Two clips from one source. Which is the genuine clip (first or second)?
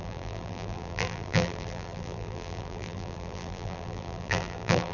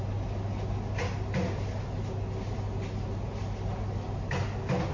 second